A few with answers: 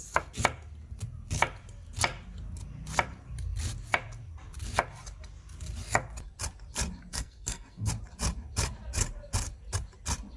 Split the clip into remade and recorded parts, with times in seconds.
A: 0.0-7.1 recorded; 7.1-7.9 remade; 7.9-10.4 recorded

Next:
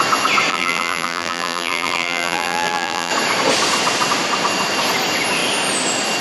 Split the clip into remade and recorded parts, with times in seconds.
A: 0.0-0.5 recorded; 0.5-3.1 remade; 3.1-6.2 recorded

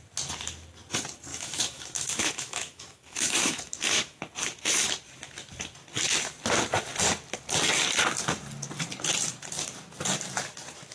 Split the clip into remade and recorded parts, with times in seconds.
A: 0.0-1.3 recorded; 1.3-4.2 remade; 4.2-10.9 recorded